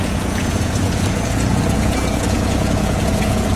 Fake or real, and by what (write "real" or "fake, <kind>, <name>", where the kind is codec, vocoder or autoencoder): fake, vocoder, Vocos